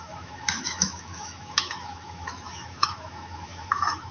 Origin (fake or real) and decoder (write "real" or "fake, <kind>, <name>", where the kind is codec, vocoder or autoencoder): fake, autoencoder, DAC-VAE